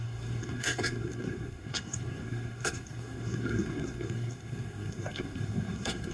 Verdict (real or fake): fake